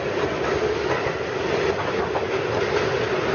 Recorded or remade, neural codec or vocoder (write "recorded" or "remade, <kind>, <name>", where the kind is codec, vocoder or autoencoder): recorded